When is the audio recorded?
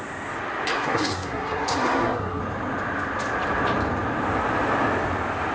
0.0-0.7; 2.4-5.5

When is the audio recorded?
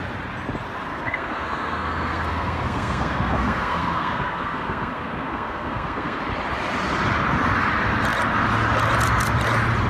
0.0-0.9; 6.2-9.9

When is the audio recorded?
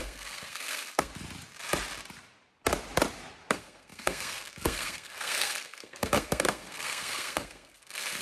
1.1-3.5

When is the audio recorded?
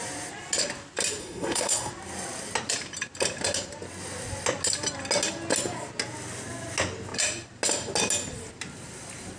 0.0-1.2; 1.9-9.4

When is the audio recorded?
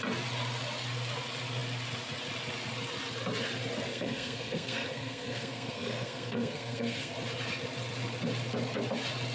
0.0-3.9; 7.1-9.3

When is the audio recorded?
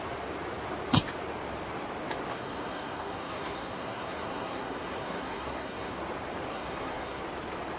0.0-2.3; 6.0-6.5; 7.2-7.8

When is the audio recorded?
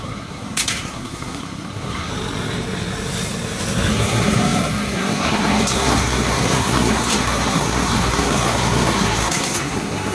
2.1-3.9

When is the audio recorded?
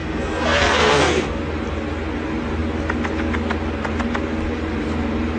1.4-5.4